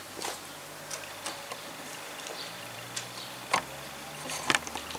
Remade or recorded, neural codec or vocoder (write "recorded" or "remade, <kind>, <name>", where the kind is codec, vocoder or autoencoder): remade, vocoder, BigVGAN v2